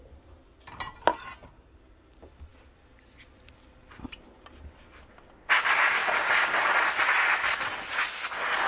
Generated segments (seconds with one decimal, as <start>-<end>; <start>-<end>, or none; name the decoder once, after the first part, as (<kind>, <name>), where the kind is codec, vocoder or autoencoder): none